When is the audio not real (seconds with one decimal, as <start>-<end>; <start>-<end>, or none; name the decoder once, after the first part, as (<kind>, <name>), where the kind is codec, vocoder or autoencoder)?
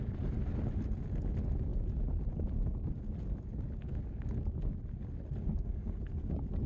5.5-6.3 (codec, SNAC)